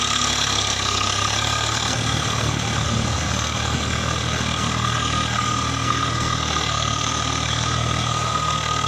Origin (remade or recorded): remade